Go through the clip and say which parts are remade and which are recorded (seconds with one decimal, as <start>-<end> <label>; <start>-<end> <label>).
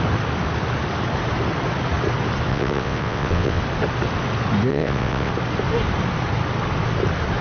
0.0-2.5 recorded; 2.5-3.6 remade; 3.6-4.7 recorded; 4.7-5.3 remade; 5.3-7.4 recorded